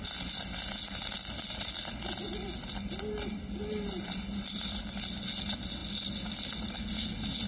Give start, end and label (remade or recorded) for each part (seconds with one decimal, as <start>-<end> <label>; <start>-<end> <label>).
0.0-7.5 recorded